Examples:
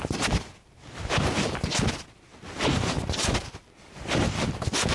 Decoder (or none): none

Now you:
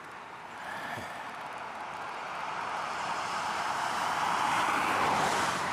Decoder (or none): vocoder, BigVGAN v2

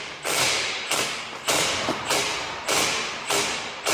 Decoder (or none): vocoder, BigVGAN v2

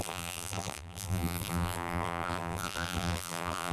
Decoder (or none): vocoder, BigVGAN v2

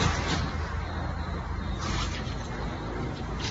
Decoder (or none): none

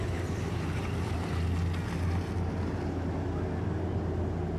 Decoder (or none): none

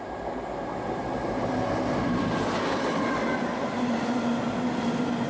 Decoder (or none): none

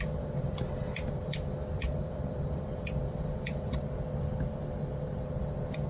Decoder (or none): vocoder, BigVGAN v2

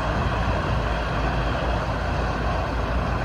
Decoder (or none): none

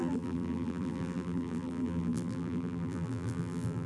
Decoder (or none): vocoder, BigVGAN v2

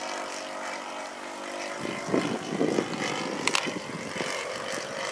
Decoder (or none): none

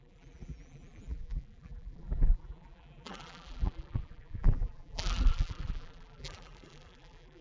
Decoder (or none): vocoder, BigVGAN v2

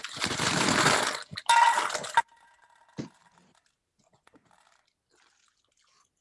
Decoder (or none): none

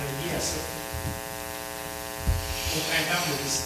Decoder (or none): none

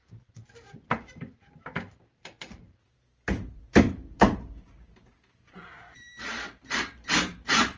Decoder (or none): vocoder, BigVGAN v2